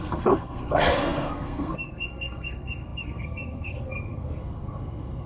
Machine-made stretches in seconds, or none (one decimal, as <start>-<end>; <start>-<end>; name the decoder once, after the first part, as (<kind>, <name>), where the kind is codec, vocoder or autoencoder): 0.0-5.3 (codec, SNAC)